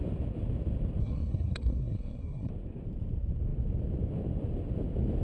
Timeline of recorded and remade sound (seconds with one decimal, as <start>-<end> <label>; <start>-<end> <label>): 0.0-1.0 recorded; 1.0-2.5 remade; 2.5-5.2 recorded